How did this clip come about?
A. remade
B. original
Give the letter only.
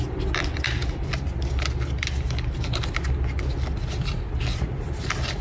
B